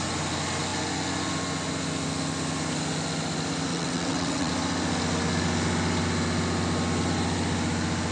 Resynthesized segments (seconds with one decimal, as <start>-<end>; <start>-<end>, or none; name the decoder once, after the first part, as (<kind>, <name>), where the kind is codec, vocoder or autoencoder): 3.7-4.5 (vocoder, WaveNeXt)